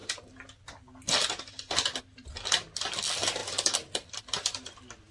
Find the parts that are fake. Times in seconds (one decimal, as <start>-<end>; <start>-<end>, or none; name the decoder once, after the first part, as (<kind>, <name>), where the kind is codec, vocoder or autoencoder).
0.0-3.4 (vocoder, BigVGAN v2); 4.2-5.1

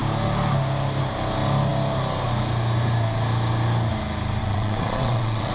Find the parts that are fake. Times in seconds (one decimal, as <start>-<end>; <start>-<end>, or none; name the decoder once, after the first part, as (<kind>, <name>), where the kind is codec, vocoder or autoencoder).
4.4-5.5 (vocoder, WaveNeXt)

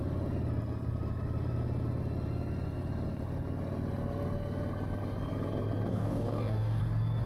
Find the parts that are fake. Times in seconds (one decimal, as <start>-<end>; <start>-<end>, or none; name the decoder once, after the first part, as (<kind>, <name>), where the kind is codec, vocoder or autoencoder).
5.9-6.8 (codec, DAC)

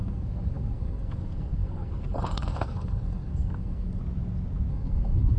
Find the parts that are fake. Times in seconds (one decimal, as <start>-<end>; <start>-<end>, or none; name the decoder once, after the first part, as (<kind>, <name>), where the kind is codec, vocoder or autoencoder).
0.0-4.0 (codec, SNAC); 4.7-5.4

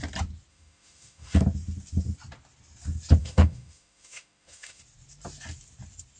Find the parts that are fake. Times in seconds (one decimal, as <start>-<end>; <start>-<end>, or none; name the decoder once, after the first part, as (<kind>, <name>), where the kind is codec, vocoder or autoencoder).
0.5-1.4 (autoencoder, DAC-VAE); 3.2-4.8

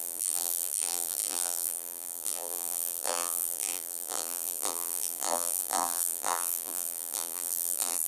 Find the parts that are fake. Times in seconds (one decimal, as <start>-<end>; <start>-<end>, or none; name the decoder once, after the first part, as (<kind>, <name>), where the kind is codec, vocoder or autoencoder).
0.0-8.1 (vocoder, BigVGAN v2)

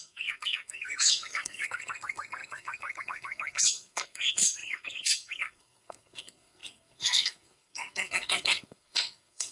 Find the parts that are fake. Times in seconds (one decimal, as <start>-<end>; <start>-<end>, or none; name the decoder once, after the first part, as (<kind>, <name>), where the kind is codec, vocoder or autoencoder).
0.0-9.5 (codec, SNAC)

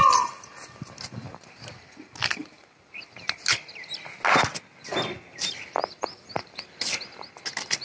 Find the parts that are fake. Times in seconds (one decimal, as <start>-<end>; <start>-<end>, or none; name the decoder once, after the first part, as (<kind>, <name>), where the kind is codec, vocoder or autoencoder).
none